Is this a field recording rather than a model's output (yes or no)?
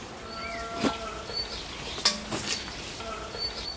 yes